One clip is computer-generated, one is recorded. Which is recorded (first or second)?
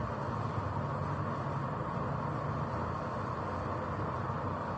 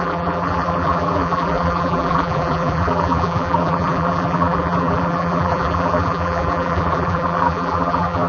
first